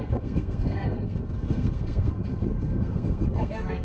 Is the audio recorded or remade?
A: remade